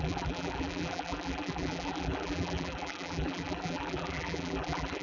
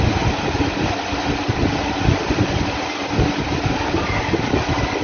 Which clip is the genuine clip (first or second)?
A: second